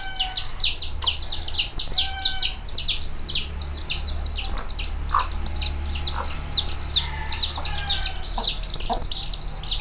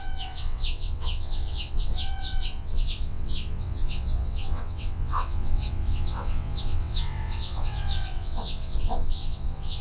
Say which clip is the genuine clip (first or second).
first